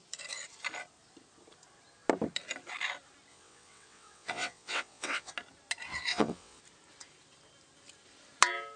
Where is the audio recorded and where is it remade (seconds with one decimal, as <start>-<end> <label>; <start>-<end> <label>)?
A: 0.0-3.3 recorded; 3.3-5.3 remade; 5.3-6.1 recorded; 6.1-6.6 remade; 6.6-8.8 recorded